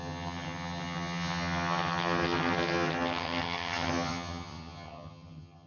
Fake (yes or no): yes